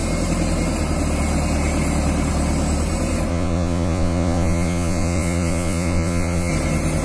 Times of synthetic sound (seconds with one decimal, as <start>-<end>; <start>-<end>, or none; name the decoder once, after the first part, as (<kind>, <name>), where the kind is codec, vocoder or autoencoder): 3.3-6.5 (vocoder, Vocos)